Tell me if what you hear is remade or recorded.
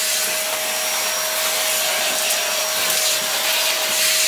recorded